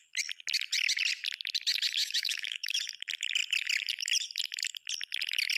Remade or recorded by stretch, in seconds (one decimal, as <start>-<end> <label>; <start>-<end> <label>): 0.0-2.0 recorded; 2.0-2.8 remade; 2.8-5.6 recorded